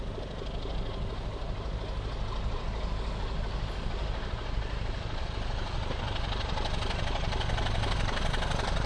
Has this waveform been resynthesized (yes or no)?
no